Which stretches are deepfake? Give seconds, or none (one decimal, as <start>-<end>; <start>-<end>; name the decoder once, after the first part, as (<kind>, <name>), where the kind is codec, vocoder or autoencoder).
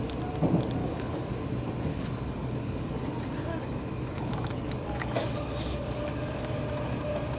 0.8-1.3 (codec, DAC); 1.9-3.0; 3.5-6.6